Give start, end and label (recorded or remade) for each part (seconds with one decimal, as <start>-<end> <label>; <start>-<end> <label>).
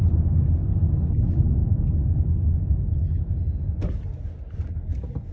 0.0-5.3 recorded